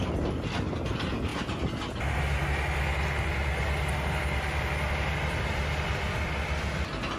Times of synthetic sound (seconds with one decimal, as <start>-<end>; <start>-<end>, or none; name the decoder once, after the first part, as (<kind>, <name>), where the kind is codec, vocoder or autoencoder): none